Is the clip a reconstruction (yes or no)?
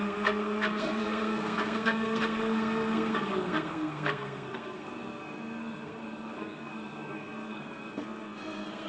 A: yes